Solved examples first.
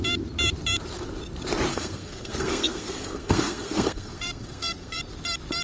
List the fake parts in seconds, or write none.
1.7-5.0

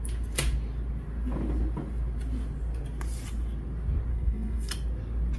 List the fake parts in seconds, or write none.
4.1-4.7

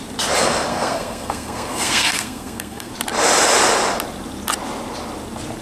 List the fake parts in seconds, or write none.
0.7-2.9

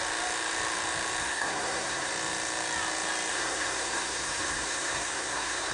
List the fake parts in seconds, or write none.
1.2-2.1; 3.3-5.7

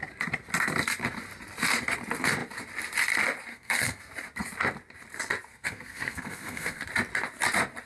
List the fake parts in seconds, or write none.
3.5-4.1; 5.5-6.8

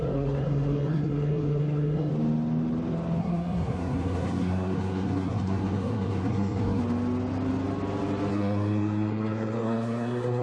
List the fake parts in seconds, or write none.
0.0-2.1; 3.2-6.8; 8.3-10.4

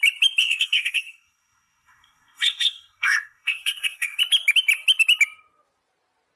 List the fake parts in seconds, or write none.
0.4-4.2

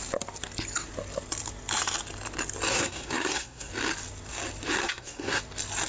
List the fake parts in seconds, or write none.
2.7-3.7; 4.8-5.4